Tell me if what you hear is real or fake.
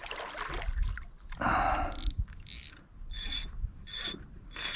real